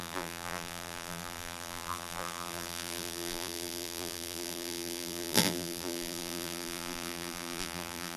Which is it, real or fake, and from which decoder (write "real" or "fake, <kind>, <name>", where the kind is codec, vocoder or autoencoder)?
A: fake, vocoder, BigVGAN v2